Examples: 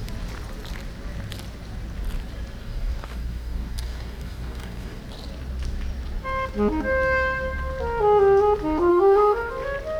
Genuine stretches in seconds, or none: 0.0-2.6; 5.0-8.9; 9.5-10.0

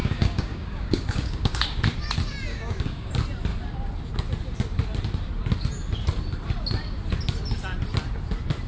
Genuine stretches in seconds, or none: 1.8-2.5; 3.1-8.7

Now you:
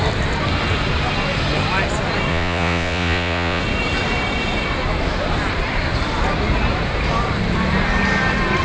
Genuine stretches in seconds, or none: 0.0-2.3; 3.6-8.6

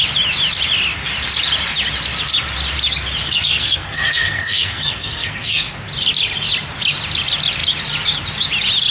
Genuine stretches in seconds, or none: 0.0-3.2; 5.7-8.9

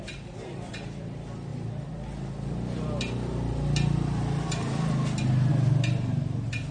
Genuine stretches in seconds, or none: 0.0-6.7